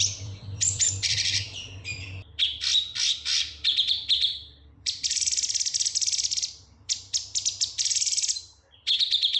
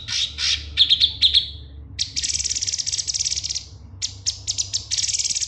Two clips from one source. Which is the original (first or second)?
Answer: second